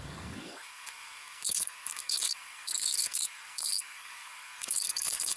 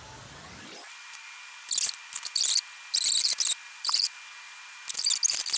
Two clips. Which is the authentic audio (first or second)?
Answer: second